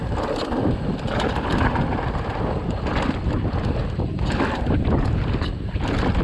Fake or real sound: fake